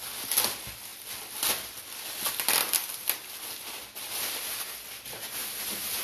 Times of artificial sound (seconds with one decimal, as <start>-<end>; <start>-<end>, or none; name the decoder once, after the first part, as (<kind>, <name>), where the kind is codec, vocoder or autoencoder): none